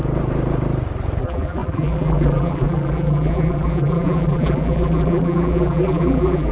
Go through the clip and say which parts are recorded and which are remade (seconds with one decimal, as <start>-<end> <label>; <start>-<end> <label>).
0.0-1.2 recorded; 1.2-6.5 remade